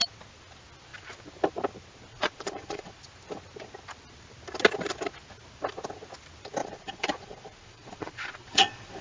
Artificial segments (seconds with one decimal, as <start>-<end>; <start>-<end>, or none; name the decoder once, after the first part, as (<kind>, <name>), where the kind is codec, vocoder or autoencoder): 2.1-2.9 (vocoder, Vocos); 6.6-9.0